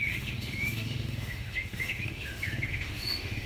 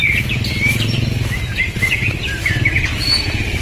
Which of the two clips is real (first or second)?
second